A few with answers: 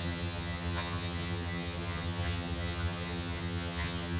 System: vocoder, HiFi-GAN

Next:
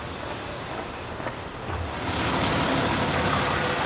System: vocoder, BigVGAN v2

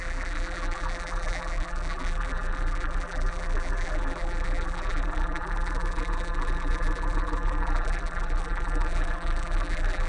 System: vocoder, BigVGAN v2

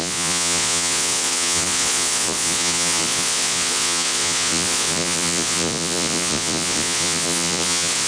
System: vocoder, Vocos